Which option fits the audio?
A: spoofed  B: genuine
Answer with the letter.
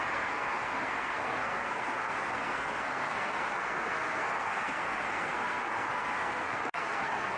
A